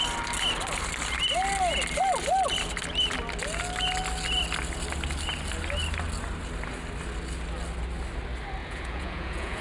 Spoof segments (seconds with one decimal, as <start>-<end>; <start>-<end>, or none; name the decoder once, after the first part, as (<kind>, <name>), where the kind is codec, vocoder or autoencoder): 8.6-9.6 (vocoder, Vocos)